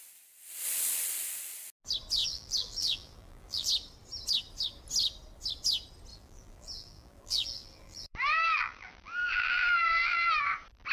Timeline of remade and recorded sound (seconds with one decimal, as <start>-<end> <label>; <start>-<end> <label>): 0.0-2.2 recorded; 2.2-3.7 remade; 3.7-6.1 recorded; 6.1-10.4 remade; 10.4-10.9 recorded